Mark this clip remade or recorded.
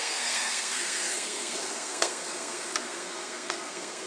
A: remade